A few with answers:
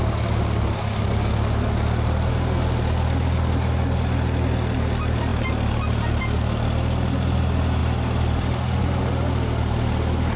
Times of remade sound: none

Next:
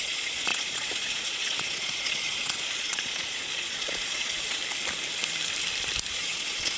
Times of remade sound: 0.0-4.6 (vocoder, Vocos); 6.1-6.8

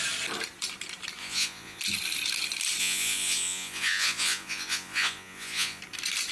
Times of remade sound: 1.2-1.8 (vocoder, Vocos); 2.8-5.8